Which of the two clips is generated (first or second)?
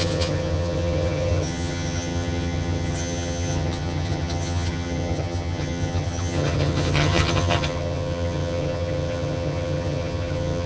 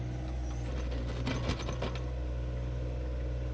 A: first